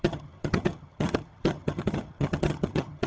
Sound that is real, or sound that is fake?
fake